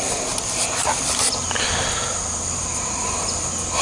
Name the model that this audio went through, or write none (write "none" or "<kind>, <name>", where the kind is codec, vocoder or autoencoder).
none